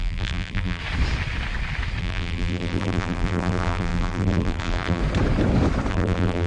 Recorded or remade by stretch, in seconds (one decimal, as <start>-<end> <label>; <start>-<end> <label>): 0.0-0.8 remade; 0.8-2.0 recorded; 2.0-5.0 remade; 5.0-5.9 recorded; 5.9-6.5 remade